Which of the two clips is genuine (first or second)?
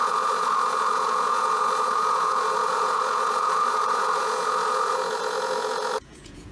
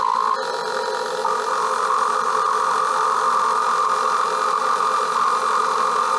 second